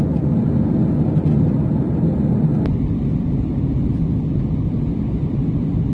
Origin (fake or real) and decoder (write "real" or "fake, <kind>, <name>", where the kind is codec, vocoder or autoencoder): real